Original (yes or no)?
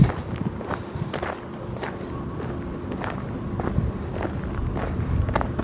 yes